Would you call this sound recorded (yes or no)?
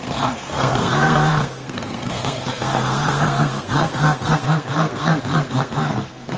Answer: no